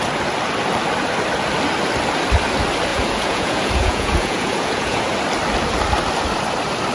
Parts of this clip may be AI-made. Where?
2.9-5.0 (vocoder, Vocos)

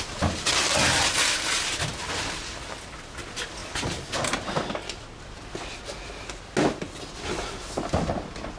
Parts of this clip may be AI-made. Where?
none

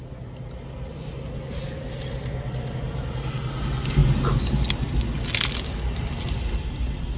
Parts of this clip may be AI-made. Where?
none

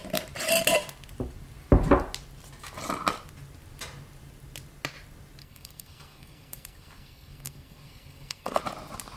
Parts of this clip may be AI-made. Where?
5.4-8.6 (codec, SNAC)

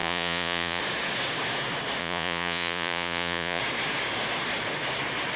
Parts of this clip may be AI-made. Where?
0.0-0.8 (vocoder, Vocos); 2.0-3.6

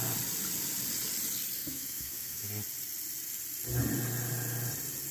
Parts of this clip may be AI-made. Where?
1.6-2.5 (autoencoder, DAC-VAE)

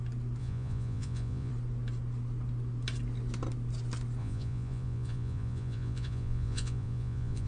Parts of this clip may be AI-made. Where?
0.4-1.5 (vocoder, Vocos); 4.2-7.5

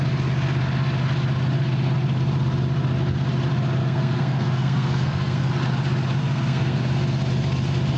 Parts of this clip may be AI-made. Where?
3.8-5.5 (codec, SNAC); 6.2-6.8